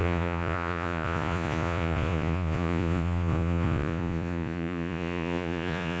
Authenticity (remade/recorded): remade